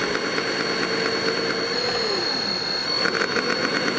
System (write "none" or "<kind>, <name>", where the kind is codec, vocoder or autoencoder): none